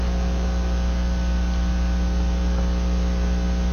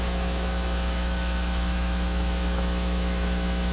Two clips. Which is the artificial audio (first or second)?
second